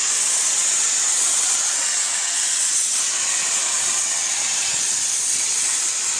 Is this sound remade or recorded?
remade